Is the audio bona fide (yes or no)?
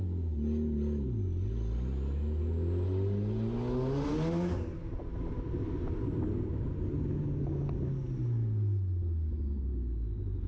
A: yes